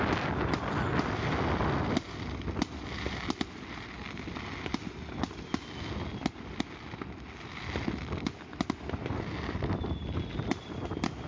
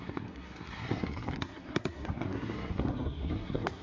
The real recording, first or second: first